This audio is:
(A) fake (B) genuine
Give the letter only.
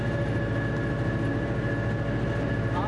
B